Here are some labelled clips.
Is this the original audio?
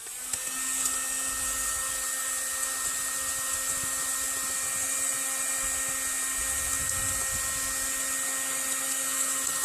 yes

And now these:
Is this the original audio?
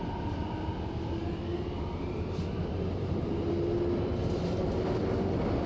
yes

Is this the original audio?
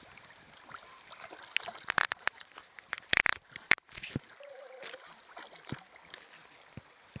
yes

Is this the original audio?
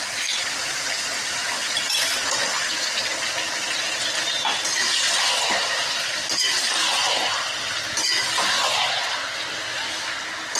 yes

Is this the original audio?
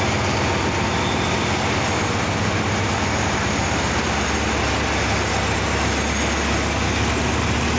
yes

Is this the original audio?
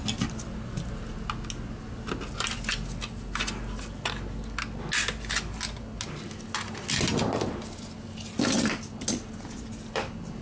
yes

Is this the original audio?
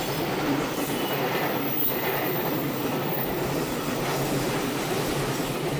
yes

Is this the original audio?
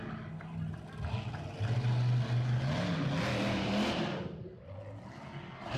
yes